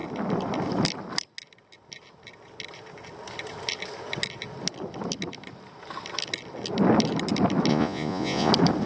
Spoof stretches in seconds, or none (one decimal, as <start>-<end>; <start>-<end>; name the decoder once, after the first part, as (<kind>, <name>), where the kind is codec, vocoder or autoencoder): 7.7-8.5 (vocoder, Vocos)